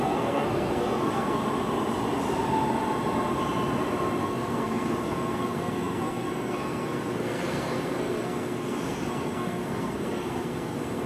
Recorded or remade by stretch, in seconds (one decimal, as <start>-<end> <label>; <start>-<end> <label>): 0.0-1.4 remade; 1.4-4.2 recorded; 4.2-11.1 remade